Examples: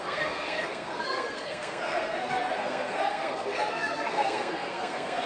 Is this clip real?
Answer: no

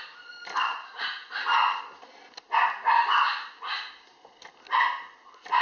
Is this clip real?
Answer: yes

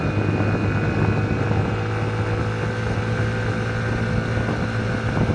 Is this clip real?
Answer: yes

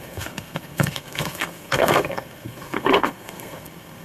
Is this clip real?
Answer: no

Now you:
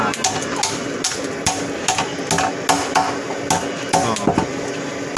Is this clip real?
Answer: yes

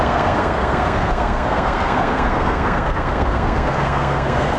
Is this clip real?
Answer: no